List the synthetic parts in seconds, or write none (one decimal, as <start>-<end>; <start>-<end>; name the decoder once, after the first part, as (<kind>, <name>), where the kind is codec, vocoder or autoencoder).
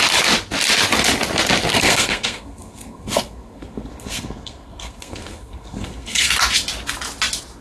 1.7-6.3 (codec, SNAC)